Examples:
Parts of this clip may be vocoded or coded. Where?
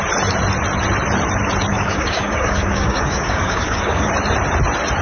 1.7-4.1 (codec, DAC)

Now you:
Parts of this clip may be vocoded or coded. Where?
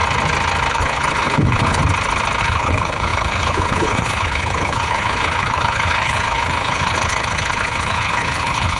0.7-1.8 (codec, HILCodec); 2.4-8.8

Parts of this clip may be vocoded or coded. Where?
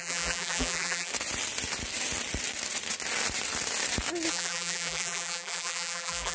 0.0-1.1 (vocoder, BigVGAN v2); 4.3-6.3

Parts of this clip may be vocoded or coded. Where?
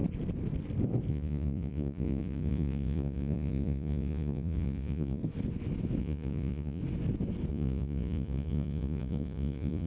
1.1-5.2 (vocoder, Vocos); 6.0-6.8; 7.5-9.9